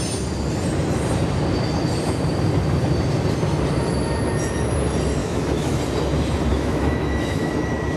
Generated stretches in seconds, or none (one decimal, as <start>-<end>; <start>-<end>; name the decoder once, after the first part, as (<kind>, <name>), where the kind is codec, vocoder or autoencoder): 5.2-5.8 (autoencoder, DAC-VAE); 6.5-7.5